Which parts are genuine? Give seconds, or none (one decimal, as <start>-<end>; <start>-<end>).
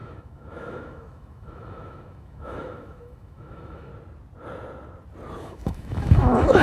3.9-5.4